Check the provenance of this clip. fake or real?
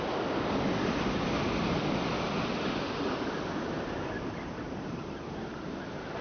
real